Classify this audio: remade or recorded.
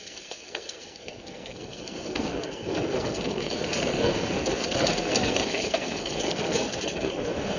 remade